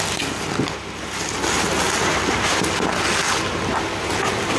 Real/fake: real